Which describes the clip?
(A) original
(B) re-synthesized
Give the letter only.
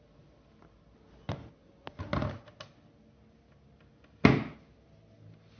A